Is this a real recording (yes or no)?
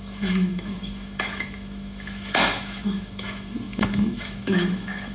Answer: no